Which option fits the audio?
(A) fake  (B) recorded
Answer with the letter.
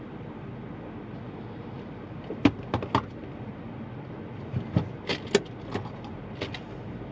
B